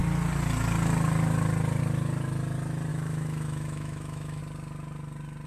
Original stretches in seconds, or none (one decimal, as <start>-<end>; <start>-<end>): 0.0-2.9; 4.4-5.5

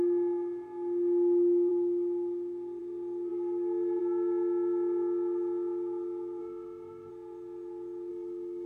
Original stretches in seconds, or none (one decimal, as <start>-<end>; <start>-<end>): 0.0-6.4; 7.1-8.1

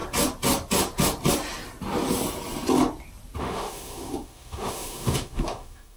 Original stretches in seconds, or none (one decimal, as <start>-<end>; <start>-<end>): 0.0-3.4

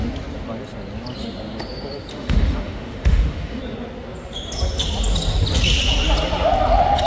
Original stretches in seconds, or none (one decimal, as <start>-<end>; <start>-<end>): 0.0-2.1; 3.6-7.1

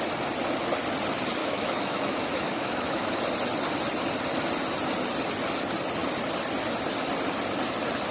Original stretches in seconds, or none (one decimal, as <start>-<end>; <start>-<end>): 0.0-1.4; 3.2-8.1

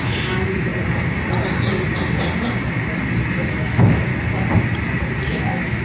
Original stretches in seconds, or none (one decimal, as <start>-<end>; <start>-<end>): 0.7-3.4; 4.1-5.3